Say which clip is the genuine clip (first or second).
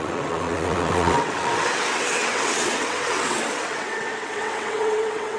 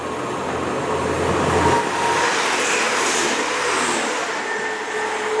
second